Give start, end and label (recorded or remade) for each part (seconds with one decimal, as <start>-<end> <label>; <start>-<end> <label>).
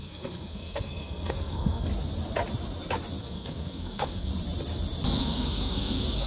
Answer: 0.0-1.9 remade; 1.9-3.2 recorded; 3.2-4.3 remade; 4.3-5.2 recorded; 5.2-6.3 remade